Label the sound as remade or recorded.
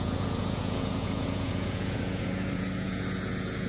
remade